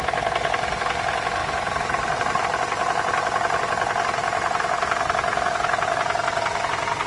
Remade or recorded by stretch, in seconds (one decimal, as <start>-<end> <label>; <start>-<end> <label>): 0.0-1.4 recorded; 1.4-2.4 remade; 2.4-4.2 recorded; 4.2-6.2 remade; 6.2-7.1 recorded